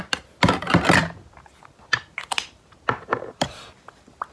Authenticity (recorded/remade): recorded